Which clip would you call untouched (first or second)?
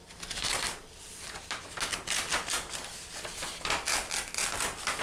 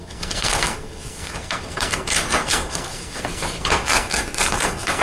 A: first